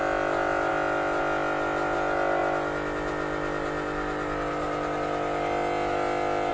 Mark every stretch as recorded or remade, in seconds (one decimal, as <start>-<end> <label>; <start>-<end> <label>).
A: 0.0-6.5 recorded